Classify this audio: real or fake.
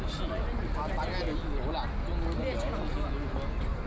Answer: real